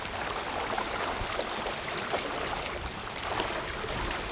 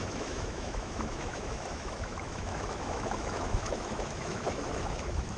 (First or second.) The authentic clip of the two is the first